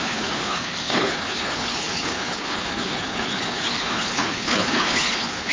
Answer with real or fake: fake